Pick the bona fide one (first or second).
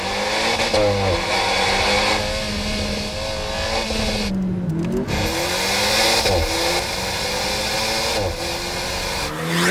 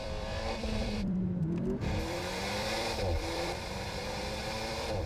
first